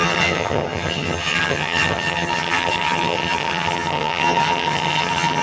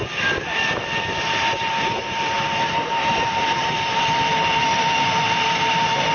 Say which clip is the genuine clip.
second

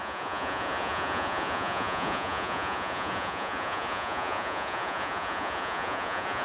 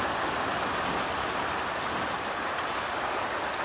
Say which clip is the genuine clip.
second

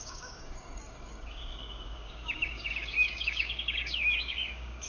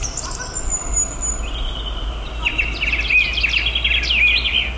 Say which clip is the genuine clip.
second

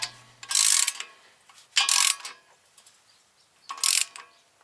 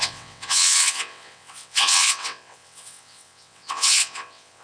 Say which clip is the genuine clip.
first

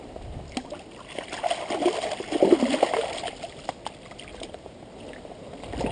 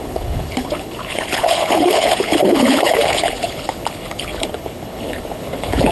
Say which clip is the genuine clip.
first